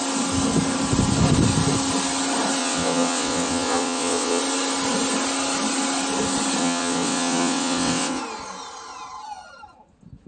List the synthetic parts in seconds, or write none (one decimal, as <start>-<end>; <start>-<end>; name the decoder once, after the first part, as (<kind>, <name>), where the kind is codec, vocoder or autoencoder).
2.6-4.4 (vocoder, WaveNeXt); 6.6-8.2